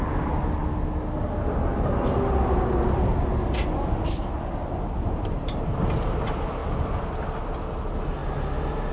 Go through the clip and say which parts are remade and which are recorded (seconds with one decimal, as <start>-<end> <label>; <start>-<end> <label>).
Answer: 0.0-8.9 recorded